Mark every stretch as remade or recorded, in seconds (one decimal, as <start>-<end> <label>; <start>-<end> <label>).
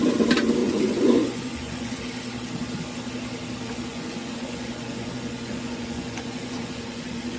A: 0.0-0.6 recorded; 0.6-2.0 remade; 2.0-3.9 recorded; 3.9-7.4 remade